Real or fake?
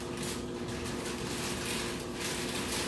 real